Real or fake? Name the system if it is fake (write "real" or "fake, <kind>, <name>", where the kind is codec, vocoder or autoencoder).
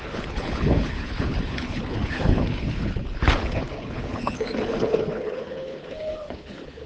fake, codec, HILCodec